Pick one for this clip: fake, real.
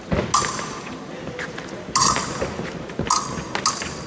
real